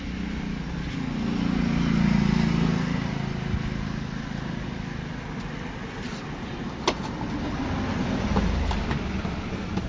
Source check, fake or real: real